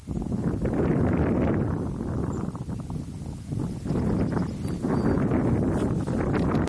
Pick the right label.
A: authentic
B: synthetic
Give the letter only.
A